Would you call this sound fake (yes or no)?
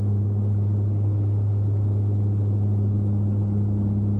no